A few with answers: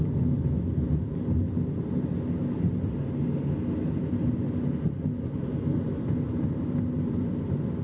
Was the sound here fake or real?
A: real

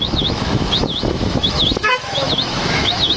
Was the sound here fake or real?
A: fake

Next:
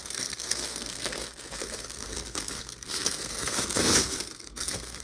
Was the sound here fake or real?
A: fake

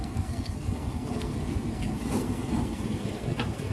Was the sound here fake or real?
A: fake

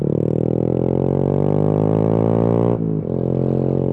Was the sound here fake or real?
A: real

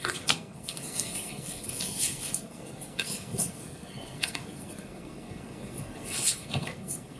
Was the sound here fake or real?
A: fake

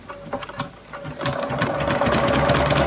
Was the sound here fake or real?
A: real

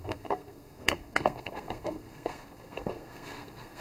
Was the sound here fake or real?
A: fake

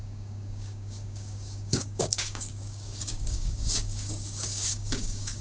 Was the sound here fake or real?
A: fake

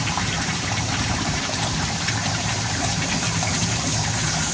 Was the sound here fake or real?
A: fake